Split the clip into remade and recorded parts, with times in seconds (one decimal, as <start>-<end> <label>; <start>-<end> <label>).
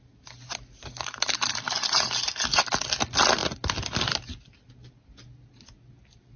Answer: 0.0-6.4 recorded